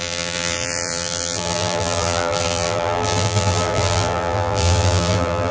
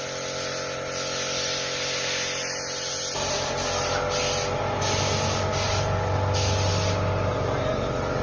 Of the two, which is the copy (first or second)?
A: first